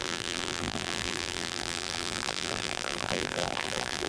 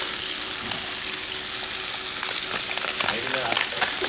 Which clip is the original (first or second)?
second